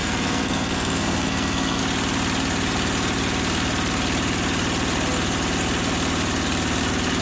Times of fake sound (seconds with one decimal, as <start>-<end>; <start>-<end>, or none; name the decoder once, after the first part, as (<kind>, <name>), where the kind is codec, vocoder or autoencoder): 0.0-1.8 (codec, SNAC)